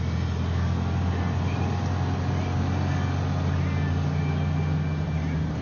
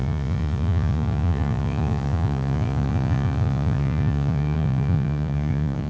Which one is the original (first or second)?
first